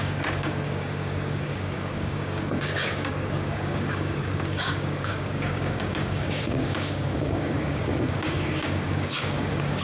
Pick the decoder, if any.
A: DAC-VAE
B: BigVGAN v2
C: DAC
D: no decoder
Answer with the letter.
C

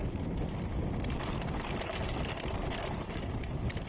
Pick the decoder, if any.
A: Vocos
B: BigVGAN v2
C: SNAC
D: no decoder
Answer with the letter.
D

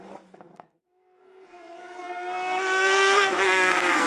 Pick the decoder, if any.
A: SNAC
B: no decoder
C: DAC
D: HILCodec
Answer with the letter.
A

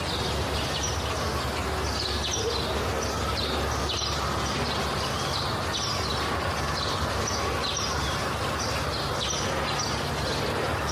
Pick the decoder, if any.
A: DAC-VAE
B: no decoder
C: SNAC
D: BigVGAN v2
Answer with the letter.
B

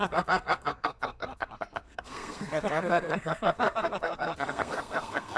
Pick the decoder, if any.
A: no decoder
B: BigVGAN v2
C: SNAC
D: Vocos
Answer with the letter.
C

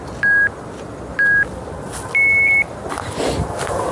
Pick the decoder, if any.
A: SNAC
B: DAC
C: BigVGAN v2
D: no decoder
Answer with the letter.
D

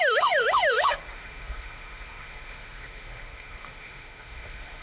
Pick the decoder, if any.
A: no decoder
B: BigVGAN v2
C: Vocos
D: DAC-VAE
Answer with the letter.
D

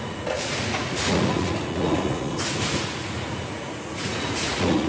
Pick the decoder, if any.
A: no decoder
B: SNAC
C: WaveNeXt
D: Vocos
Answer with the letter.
D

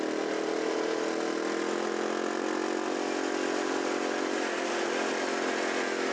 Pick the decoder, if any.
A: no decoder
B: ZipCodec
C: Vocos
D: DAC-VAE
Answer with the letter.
A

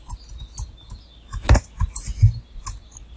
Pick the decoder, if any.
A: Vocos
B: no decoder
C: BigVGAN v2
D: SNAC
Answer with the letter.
B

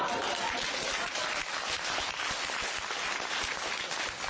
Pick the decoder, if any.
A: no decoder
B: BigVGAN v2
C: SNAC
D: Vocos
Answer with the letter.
A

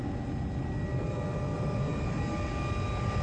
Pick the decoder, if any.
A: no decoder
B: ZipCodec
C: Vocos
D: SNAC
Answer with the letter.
A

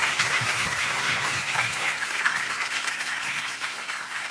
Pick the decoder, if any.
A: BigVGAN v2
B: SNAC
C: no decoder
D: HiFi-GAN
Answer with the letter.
B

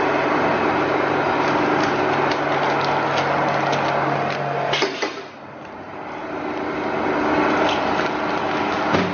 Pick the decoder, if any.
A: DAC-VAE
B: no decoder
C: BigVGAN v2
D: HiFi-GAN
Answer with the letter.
B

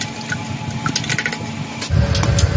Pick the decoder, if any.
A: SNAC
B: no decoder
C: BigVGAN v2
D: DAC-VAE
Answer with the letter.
B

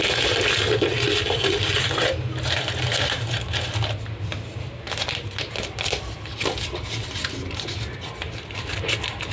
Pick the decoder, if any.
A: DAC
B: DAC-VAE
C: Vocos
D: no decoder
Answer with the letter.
D